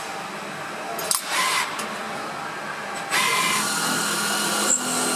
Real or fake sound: real